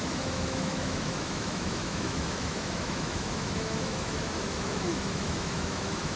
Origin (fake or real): fake